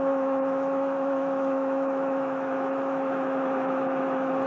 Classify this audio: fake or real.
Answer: fake